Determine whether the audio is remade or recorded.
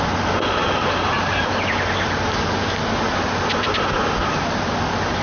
recorded